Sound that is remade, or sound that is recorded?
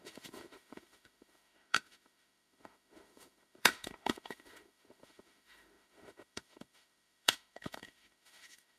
remade